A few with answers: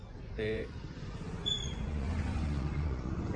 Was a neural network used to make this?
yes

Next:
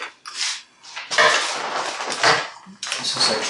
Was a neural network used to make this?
no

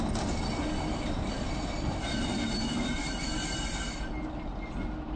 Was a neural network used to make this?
no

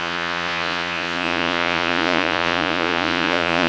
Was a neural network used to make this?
yes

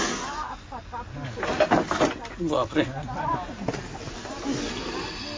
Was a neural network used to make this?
no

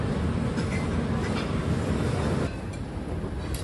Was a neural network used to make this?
no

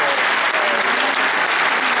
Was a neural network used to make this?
no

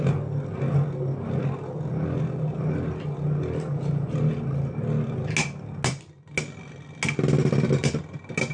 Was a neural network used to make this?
no